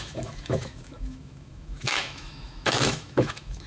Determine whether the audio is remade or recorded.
remade